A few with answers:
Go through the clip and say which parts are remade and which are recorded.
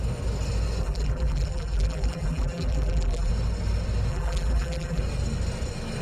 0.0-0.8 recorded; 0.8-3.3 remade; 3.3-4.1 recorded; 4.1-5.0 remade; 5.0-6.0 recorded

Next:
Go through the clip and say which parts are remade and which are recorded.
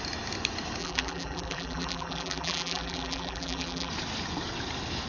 0.0-0.8 recorded; 0.8-3.9 remade; 3.9-5.1 recorded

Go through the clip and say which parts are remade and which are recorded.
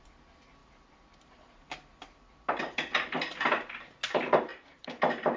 0.0-0.6 recorded; 0.6-3.8 remade; 3.8-4.5 recorded; 4.5-5.4 remade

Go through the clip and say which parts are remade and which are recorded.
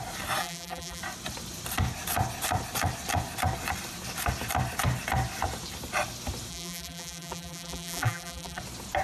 0.0-0.4 recorded; 0.4-1.0 remade; 1.0-6.5 recorded; 6.5-8.6 remade; 8.6-9.0 recorded